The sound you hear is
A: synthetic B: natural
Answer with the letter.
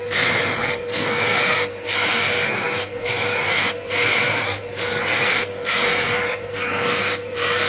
A